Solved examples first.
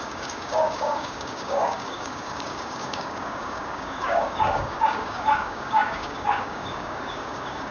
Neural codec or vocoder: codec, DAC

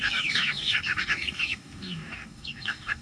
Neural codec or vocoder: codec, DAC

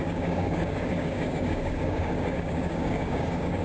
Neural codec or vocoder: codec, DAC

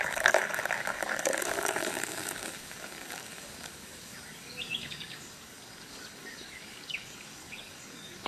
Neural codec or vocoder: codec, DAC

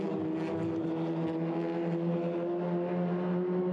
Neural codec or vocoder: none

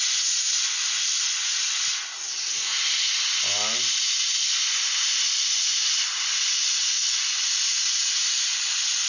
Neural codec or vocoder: none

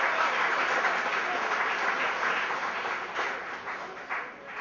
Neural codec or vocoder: none